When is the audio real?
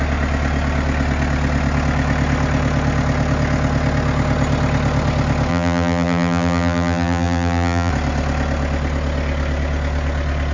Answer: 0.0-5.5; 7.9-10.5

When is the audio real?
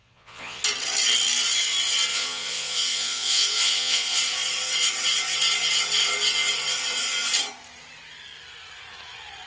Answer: 0.6-2.1; 4.2-9.5